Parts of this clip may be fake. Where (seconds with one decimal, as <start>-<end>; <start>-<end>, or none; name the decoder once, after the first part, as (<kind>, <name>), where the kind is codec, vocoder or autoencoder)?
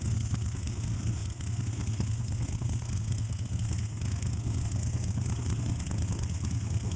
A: 0.0-7.0 (codec, SNAC)